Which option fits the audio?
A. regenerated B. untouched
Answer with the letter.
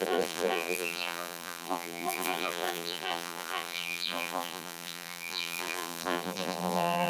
A